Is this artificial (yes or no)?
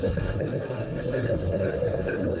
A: yes